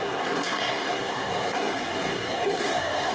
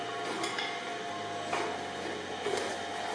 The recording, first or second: second